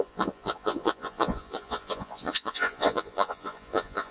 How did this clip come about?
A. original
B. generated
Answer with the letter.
B